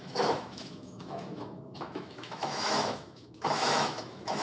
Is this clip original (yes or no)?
no